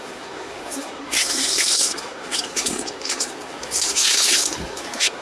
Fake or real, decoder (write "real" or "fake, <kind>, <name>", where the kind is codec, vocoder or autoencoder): fake, codec, SNAC